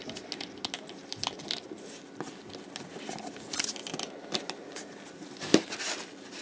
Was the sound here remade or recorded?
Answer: recorded